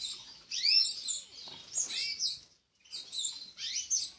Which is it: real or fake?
real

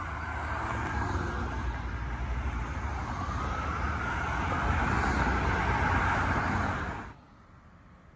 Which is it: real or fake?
real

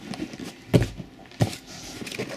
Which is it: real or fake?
real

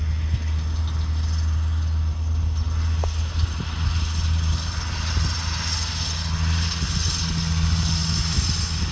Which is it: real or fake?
real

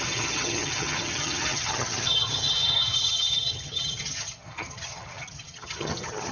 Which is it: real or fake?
fake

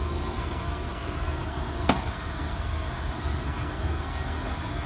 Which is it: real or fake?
fake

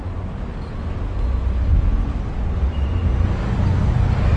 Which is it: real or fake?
real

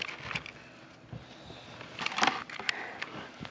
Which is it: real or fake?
real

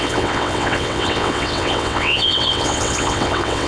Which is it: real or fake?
fake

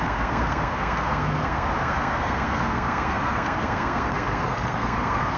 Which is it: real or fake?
fake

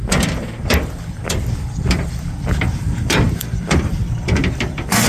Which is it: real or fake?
fake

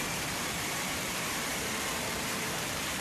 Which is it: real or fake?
fake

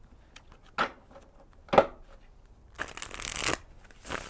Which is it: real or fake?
real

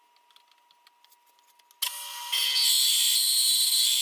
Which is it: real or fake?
real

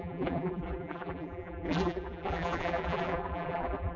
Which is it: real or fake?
fake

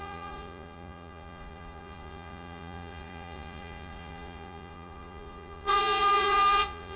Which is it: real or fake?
fake